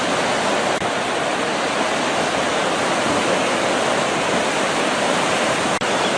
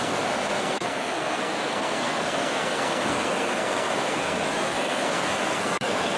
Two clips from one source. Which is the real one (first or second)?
first